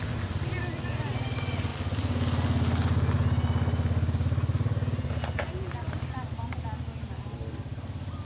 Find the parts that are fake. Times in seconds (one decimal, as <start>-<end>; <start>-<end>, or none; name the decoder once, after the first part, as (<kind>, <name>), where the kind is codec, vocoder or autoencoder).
none